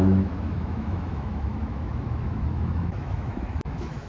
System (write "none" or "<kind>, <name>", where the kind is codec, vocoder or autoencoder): autoencoder, DAC-VAE